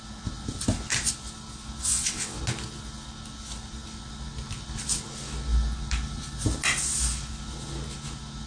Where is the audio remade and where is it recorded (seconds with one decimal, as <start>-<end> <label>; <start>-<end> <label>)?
0.0-1.8 recorded; 1.8-2.4 remade; 2.4-8.5 recorded